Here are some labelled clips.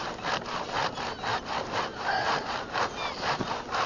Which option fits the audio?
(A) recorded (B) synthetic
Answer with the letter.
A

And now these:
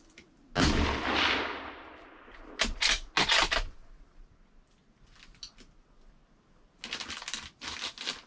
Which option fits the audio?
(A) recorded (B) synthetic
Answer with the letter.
A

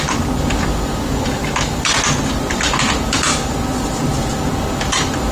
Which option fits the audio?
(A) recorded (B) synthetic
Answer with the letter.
A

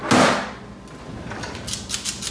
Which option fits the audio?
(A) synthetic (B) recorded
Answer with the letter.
B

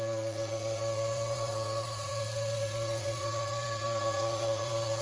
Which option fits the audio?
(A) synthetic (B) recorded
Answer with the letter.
A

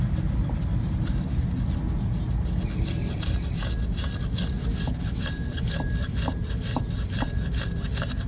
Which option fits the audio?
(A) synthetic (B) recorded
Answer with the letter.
B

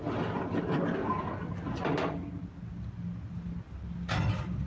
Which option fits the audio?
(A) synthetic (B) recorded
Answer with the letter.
B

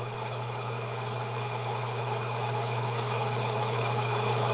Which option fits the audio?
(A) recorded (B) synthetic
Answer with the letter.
B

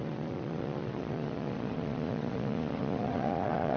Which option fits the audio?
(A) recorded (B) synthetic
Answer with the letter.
B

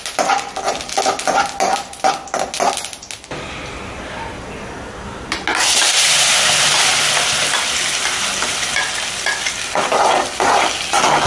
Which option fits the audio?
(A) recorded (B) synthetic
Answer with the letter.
A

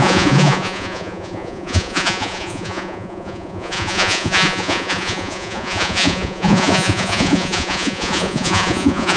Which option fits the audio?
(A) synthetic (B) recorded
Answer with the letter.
A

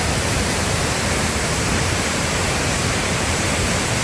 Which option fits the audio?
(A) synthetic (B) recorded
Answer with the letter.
A